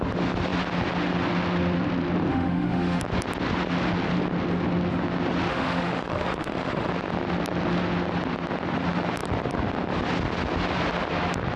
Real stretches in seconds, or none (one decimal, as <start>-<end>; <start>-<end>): 0.0-2.3; 3.0-5.5; 6.9-11.6